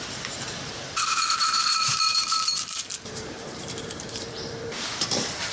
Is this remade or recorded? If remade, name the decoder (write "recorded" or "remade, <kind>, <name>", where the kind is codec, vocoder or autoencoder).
remade, vocoder, BigVGAN v2